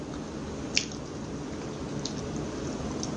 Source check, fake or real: real